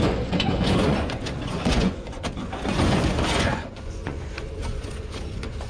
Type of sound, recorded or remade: remade